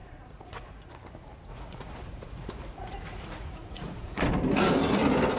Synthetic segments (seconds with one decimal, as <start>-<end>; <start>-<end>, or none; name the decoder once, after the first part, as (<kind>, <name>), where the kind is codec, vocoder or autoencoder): 0.0-0.9 (vocoder, Vocos); 1.5-4.2